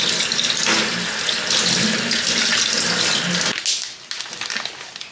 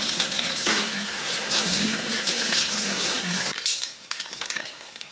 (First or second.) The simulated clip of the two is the second